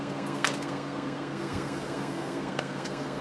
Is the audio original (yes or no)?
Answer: no